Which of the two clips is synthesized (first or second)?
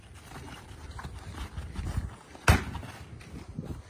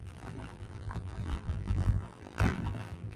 second